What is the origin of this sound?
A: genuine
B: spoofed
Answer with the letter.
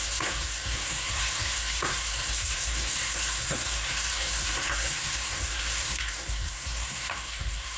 B